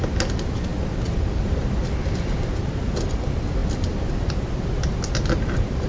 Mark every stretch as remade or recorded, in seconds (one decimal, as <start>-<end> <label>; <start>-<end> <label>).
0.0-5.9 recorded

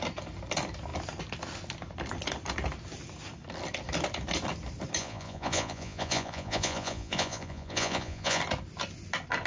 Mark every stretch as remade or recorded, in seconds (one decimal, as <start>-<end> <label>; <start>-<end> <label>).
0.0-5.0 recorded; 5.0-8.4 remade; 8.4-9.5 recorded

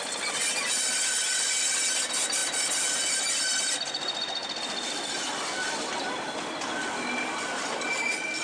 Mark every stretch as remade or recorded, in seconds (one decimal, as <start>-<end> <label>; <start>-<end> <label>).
0.0-4.4 recorded; 4.4-8.4 remade

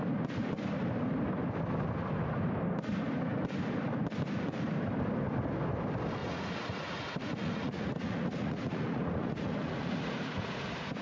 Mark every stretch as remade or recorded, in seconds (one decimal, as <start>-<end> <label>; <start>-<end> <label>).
0.0-6.2 recorded; 6.2-11.0 remade